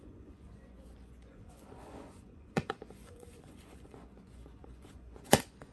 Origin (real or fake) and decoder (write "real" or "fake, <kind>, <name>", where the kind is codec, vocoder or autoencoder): fake, vocoder, Vocos